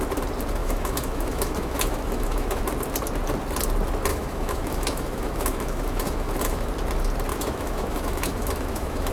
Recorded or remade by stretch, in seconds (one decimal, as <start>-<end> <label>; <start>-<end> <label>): 0.0-0.6 recorded; 0.6-2.6 remade; 2.6-4.1 recorded; 4.1-6.7 remade; 6.7-7.3 recorded; 7.3-9.1 remade